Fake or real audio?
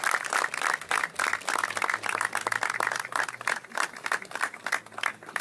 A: real